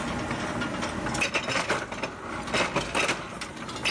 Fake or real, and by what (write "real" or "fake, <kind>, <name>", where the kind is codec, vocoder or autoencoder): real